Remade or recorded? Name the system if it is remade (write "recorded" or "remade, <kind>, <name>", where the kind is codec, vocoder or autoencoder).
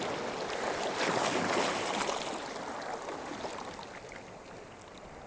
recorded